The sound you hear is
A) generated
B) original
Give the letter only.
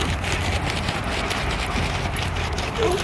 B